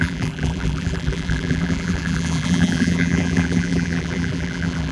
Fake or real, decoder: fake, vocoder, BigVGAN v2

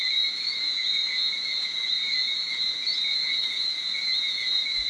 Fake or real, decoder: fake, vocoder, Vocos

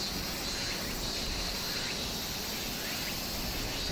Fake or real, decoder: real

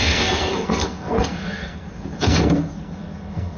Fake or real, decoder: fake, codec, SNAC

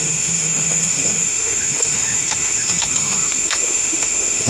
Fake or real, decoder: fake, autoencoder, DAC-VAE